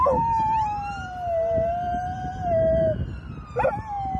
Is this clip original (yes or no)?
yes